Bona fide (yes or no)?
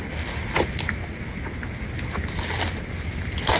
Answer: yes